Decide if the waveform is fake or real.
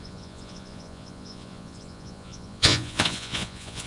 fake